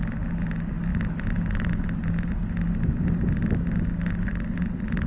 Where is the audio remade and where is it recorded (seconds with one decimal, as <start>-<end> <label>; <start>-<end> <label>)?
0.0-5.1 recorded